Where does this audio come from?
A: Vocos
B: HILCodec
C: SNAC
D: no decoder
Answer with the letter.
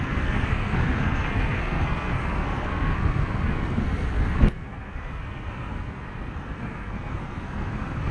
C